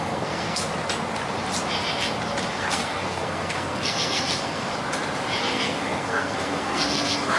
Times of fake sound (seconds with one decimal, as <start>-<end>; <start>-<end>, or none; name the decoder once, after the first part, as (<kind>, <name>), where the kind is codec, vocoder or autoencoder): 0.0-0.7 (codec, SNAC); 2.5-4.7; 5.4-7.4